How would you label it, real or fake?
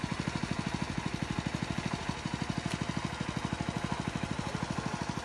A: real